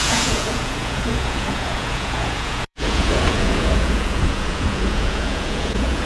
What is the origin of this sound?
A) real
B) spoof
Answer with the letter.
B